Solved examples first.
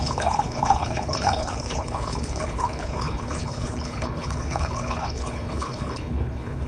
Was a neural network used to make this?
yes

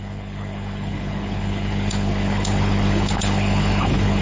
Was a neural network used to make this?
yes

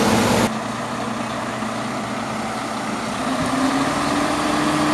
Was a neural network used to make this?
no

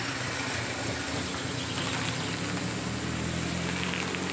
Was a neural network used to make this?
no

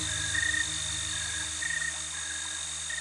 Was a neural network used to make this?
no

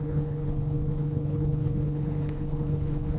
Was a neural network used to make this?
yes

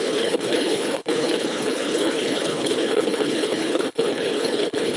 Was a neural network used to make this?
yes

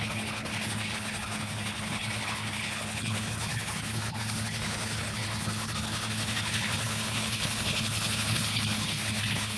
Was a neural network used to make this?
yes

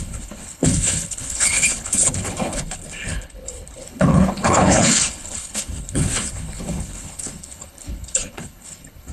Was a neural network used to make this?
yes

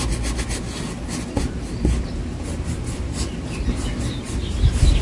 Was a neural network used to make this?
no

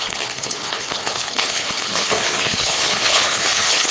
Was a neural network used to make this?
yes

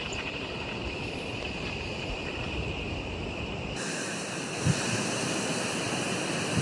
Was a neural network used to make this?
no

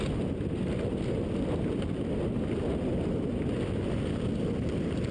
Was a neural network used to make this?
no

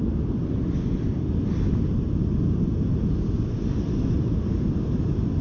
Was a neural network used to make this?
no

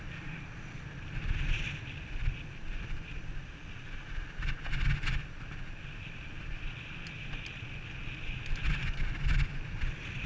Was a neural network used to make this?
no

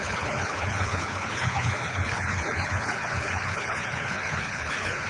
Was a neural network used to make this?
yes